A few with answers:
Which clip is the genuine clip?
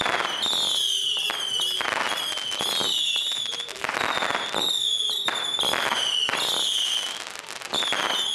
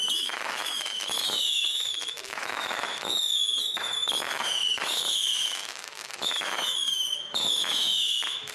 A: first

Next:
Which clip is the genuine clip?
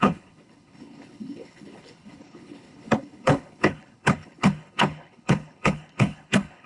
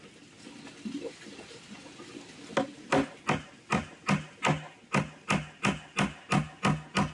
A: second